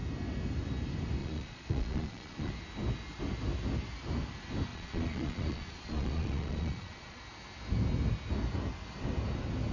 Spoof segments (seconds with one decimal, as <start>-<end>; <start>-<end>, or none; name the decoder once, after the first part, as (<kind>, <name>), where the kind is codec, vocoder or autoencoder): 1.2-2.5 (vocoder, Vocos); 4.7-7.2